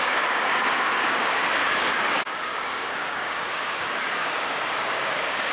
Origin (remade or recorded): remade